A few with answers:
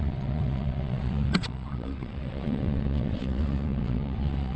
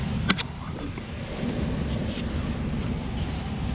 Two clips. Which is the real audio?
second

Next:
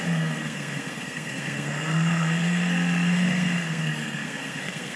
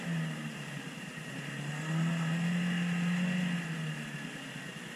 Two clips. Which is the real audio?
second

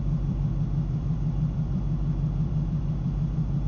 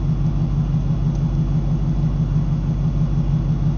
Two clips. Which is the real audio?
second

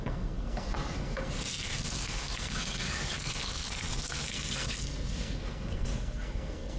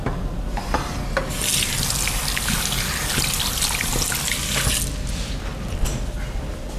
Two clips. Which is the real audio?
second